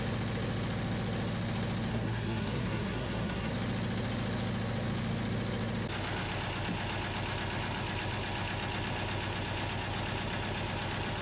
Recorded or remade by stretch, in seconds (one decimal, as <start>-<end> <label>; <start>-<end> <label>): 0.0-1.9 recorded; 1.9-3.5 remade; 3.5-11.2 recorded